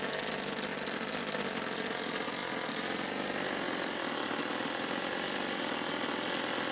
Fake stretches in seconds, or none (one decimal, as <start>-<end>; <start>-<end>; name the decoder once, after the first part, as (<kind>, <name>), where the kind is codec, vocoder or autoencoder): none

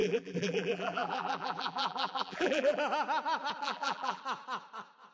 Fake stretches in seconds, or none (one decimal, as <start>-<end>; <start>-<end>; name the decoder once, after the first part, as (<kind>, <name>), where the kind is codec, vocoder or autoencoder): 0.0-2.8 (vocoder, BigVGAN v2); 3.6-4.2